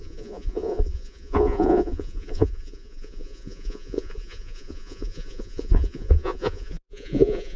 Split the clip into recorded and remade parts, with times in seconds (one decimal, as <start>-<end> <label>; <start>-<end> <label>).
0.0-7.6 remade